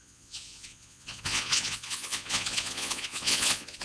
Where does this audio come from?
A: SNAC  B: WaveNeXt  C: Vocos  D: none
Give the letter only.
C